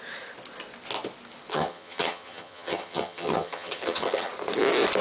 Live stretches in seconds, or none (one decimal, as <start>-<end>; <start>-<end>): 0.0-1.5; 4.3-5.0